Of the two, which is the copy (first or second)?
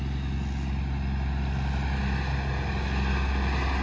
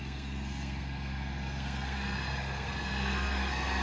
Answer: second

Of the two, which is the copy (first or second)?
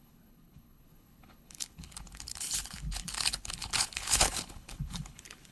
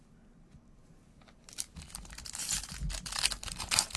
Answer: first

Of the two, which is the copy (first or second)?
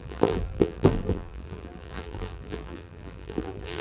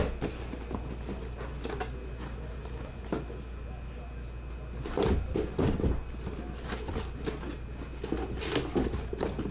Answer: first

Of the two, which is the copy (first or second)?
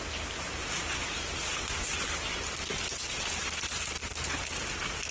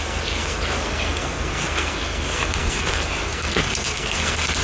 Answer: second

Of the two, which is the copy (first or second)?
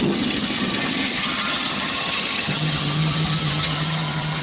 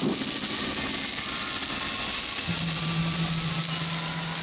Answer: first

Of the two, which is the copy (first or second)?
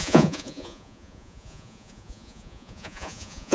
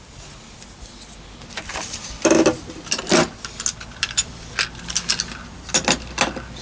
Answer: first